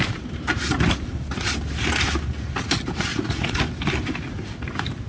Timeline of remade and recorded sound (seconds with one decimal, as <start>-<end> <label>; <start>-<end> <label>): 0.0-3.1 recorded; 3.1-3.6 remade; 3.6-5.1 recorded